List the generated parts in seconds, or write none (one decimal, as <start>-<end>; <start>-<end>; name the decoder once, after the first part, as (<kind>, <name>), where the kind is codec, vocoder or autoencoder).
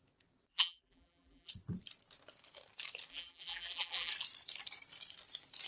0.5-1.5 (vocoder, BigVGAN v2); 3.1-4.1